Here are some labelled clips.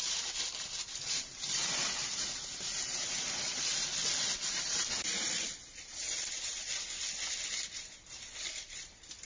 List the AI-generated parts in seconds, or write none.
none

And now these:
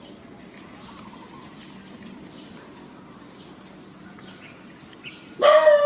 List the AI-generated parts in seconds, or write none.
none

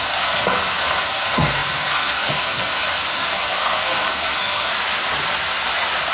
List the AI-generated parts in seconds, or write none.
0.0-4.7 (codec, SNAC)

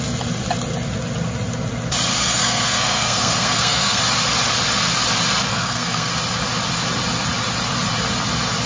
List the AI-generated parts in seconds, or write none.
2.1-4.0 (codec, SNAC); 5.5-6.1

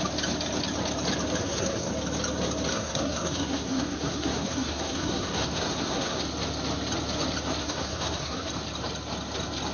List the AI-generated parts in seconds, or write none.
1.4-1.9 (codec, SNAC); 2.7-6.2; 7.6-8.5

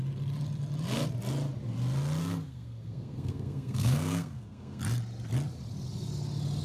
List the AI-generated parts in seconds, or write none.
2.2-4.8 (codec, SNAC)

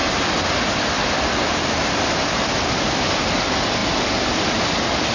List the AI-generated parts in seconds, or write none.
none